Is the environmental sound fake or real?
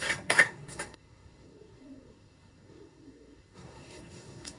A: fake